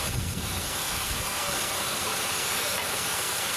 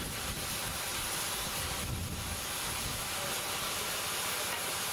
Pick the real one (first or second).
second